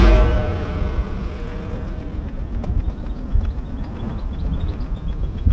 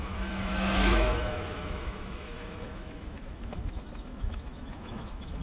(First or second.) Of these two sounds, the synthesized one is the second